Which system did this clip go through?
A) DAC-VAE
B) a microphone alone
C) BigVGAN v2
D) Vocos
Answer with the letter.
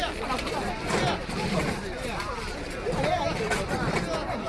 B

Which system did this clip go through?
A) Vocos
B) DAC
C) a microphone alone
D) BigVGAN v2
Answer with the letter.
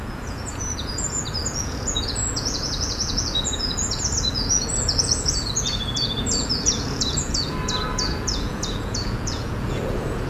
A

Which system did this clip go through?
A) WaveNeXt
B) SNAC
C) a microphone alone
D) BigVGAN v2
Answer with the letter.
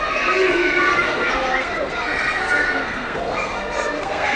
B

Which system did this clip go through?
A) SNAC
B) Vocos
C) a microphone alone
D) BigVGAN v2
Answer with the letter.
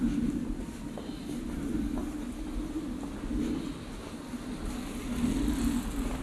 C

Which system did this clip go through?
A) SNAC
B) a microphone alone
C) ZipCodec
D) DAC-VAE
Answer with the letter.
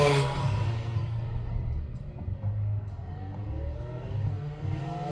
A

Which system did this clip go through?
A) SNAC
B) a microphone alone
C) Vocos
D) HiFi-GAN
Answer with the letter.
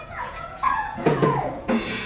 C